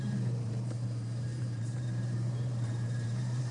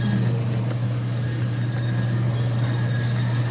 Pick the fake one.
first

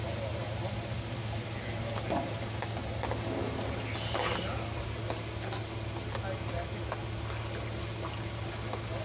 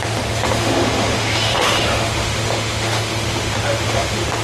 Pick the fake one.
second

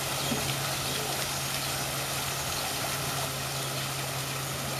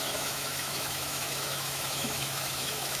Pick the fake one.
second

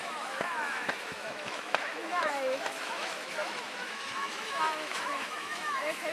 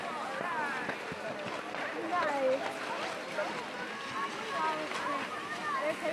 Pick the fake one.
first